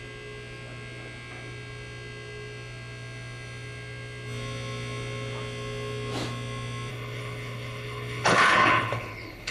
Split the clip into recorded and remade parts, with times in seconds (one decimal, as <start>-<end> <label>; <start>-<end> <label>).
0.0-6.9 recorded; 6.9-9.5 remade